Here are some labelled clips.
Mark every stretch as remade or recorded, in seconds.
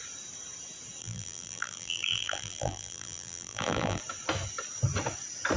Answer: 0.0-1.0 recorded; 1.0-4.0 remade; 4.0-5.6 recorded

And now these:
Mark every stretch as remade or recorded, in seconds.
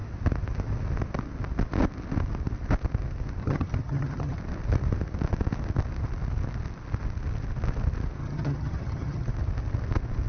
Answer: 0.0-3.4 recorded; 3.4-4.4 remade; 4.4-8.2 recorded; 8.2-9.3 remade; 9.3-10.3 recorded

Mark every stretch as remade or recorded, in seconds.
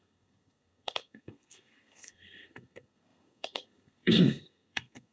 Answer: 0.0-5.1 remade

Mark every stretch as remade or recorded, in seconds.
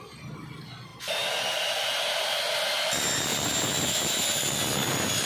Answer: 0.0-5.3 recorded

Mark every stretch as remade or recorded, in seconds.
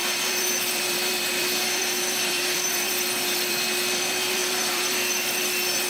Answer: 0.0-5.9 remade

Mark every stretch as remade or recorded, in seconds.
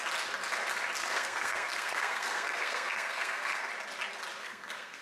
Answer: 0.0-1.0 recorded; 1.0-3.7 remade; 3.7-4.4 recorded; 4.4-5.0 remade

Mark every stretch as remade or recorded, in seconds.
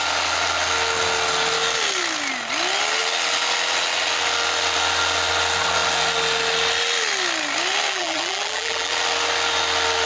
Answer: 0.0-7.9 recorded; 7.9-8.9 remade; 8.9-10.1 recorded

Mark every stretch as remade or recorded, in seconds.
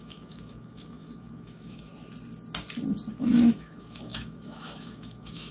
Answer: 0.0-1.9 remade; 1.9-3.1 recorded; 3.1-5.5 remade